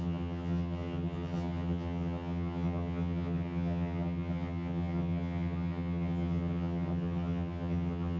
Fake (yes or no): yes